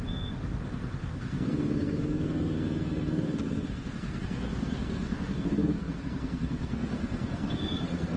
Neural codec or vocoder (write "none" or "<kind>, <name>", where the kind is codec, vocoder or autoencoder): codec, SNAC